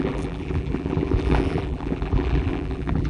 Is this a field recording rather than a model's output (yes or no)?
no